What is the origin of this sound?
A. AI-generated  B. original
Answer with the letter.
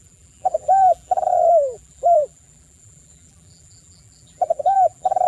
A